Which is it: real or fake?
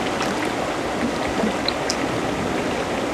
real